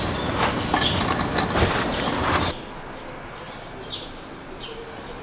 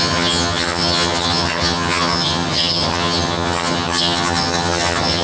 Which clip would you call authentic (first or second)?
first